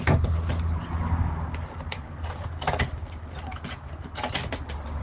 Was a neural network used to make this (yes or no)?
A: no